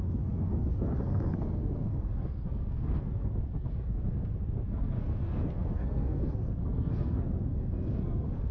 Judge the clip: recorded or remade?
remade